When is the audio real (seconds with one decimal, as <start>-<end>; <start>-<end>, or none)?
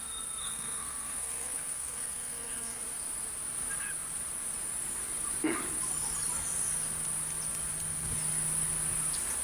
0.0-0.4; 2.8-9.4